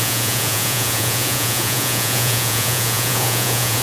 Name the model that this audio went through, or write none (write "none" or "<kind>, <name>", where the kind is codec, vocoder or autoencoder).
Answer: vocoder, Vocos